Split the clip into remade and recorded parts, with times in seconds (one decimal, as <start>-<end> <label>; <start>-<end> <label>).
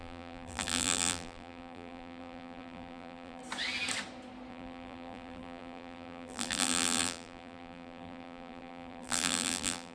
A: 0.0-3.4 remade; 3.4-4.5 recorded; 4.5-9.9 remade